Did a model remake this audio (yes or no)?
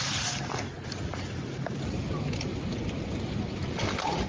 no